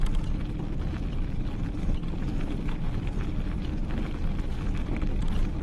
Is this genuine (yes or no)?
yes